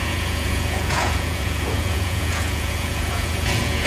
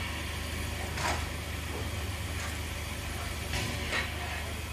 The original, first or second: second